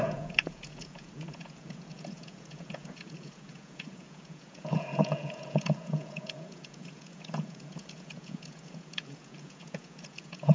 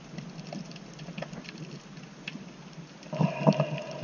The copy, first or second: first